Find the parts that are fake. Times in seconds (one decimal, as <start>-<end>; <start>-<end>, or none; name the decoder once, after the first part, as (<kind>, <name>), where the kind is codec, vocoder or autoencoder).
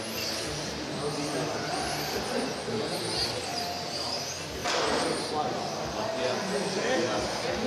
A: 4.6-5.3 (vocoder, BigVGAN v2)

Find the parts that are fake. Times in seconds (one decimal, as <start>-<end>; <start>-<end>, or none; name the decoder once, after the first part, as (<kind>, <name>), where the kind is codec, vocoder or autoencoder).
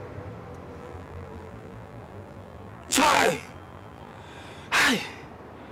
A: 0.8-4.2 (vocoder, BigVGAN v2)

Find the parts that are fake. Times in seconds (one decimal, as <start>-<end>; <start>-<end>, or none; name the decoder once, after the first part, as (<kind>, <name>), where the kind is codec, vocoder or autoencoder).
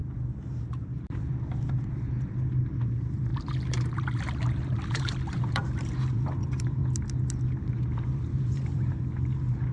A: 0.6-6.8 (vocoder, BigVGAN v2); 7.6-9.7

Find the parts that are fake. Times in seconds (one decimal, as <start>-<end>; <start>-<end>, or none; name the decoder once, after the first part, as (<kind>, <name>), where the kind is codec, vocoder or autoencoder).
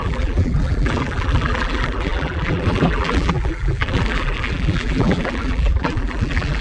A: 0.0-6.6 (vocoder, BigVGAN v2)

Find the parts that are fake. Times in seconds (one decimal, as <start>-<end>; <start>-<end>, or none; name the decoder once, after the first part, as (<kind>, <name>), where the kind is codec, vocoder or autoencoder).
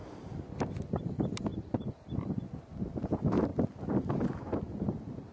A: none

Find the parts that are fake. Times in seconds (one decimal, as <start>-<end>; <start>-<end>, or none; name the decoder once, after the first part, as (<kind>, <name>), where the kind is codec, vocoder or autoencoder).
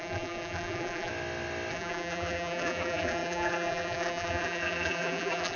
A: 0.0-1.1 (vocoder, BigVGAN v2); 1.7-5.6